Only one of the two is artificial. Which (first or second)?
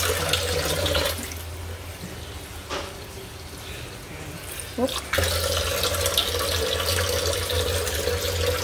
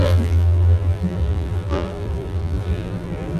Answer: second